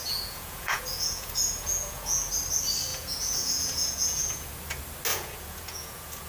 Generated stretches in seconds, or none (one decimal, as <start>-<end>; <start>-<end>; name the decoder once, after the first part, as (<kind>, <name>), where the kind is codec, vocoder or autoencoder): 0.0-2.3 (vocoder, Vocos); 2.9-4.5; 5.1-6.3